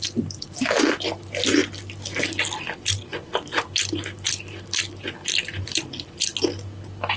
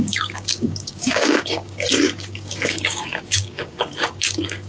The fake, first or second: second